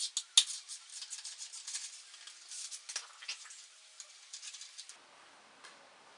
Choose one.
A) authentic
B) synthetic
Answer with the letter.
A